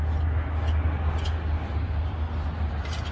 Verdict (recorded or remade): recorded